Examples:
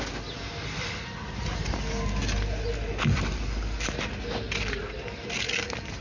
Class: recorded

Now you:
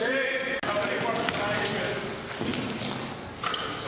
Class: recorded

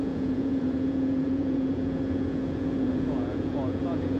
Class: remade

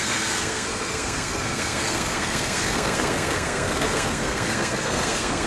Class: remade